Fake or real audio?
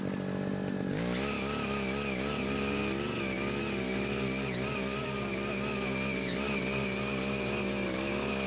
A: real